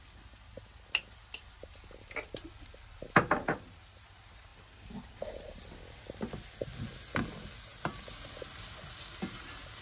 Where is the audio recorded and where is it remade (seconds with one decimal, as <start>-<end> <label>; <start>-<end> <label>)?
0.0-9.8 recorded